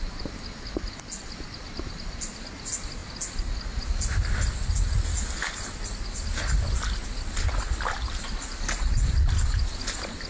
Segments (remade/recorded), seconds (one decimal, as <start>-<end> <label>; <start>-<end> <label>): 0.0-10.3 recorded